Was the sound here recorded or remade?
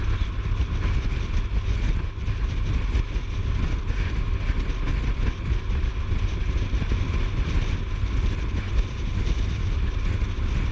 recorded